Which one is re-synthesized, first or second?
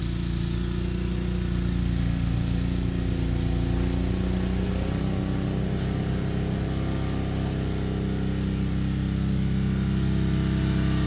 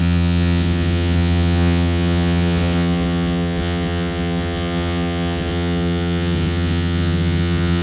second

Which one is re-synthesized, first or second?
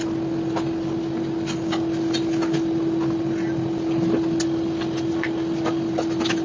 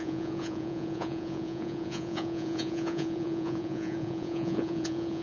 second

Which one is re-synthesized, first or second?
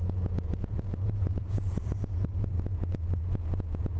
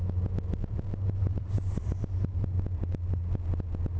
first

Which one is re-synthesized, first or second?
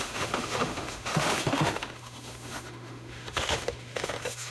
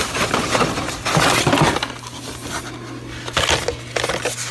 first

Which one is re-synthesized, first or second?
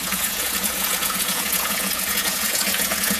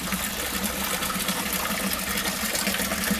first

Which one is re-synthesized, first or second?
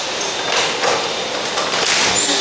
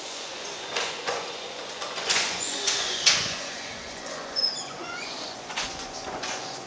second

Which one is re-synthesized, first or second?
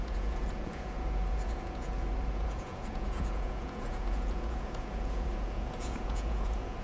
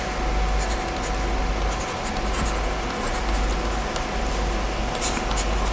first